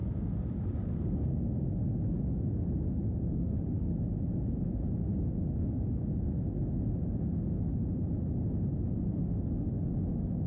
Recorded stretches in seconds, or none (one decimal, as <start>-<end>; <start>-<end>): 0.0-3.3; 3.9-10.5